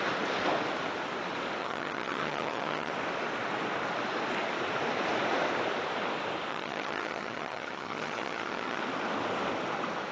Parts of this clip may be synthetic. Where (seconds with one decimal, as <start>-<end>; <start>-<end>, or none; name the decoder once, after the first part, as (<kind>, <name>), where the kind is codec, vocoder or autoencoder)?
1.6-2.9 (vocoder, HiFi-GAN); 6.5-8.8